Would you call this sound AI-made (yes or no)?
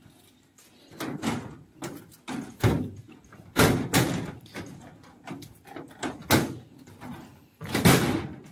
no